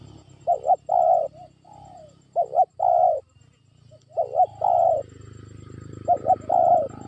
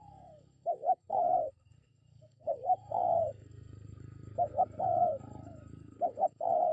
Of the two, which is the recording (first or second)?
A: first